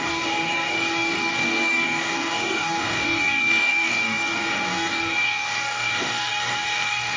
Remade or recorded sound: remade